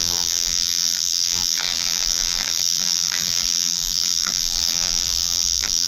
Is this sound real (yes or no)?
no